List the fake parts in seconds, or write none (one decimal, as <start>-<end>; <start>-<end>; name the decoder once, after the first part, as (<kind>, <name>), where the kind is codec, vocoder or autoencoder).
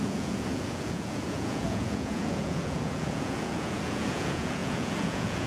0.0-5.5 (vocoder, Vocos)